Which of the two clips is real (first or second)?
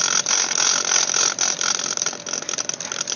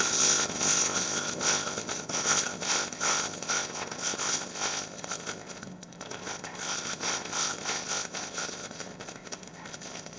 first